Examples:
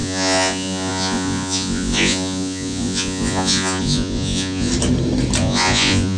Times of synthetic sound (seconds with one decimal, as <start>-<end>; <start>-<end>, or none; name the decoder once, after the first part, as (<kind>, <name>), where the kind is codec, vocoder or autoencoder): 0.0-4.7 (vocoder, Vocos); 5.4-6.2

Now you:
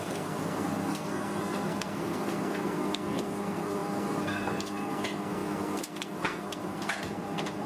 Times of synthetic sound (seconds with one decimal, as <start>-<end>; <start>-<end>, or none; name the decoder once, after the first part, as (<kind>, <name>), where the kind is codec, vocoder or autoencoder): 0.0-7.7 (codec, SNAC)

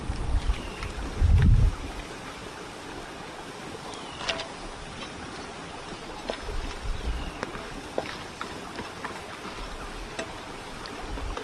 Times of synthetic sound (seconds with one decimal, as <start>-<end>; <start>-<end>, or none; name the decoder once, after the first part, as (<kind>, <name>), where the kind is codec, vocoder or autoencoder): none